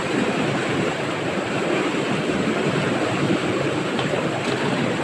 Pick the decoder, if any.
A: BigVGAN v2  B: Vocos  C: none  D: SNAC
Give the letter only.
A